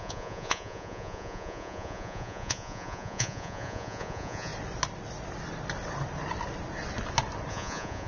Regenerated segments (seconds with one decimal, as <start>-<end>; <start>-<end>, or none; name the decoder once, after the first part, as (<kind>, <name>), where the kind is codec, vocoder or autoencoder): 0.0-4.5 (vocoder, Vocos); 7.5-8.1